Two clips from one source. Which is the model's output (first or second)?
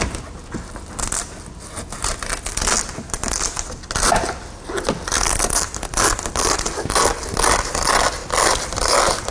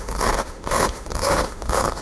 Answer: second